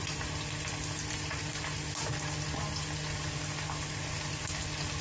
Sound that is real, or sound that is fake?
real